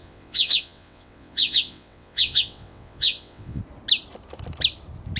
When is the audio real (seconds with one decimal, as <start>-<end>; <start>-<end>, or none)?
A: 3.6-5.2